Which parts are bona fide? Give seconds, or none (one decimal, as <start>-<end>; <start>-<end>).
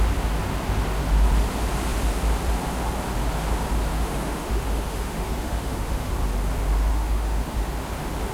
0.0-3.9; 6.1-6.9; 7.7-8.3